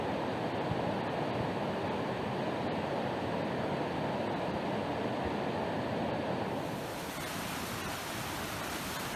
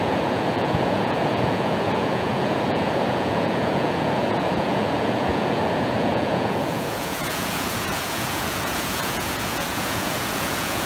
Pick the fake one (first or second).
second